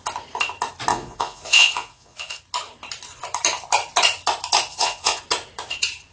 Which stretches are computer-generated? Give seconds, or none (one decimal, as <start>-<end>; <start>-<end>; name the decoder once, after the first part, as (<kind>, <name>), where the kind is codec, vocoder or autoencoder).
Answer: 0.9-2.4 (vocoder, Vocos); 4.7-5.2